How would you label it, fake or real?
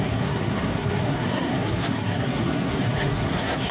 fake